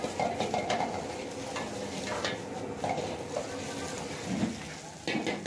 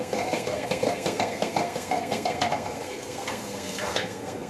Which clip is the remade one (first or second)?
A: second